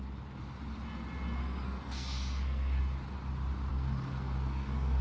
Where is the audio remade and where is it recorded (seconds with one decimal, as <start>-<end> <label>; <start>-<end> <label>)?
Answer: 0.0-1.4 recorded; 1.4-2.8 remade; 2.8-3.7 recorded; 3.7-5.0 remade